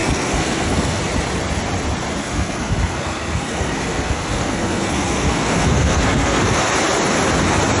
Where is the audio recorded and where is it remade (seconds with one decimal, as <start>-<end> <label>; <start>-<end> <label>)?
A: 0.0-1.0 remade; 1.0-2.2 recorded; 2.2-6.6 remade; 6.6-7.8 recorded